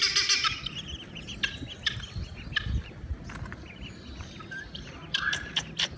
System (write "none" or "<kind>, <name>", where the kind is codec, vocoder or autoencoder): none